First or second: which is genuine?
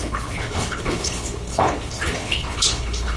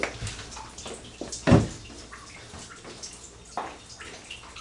second